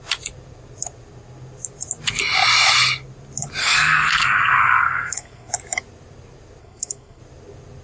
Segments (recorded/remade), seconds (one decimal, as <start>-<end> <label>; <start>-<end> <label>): 0.0-3.6 recorded; 3.6-5.5 remade; 5.5-6.6 recorded; 6.6-7.2 remade; 7.2-7.8 recorded